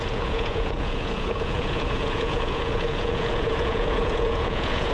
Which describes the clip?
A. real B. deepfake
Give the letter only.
B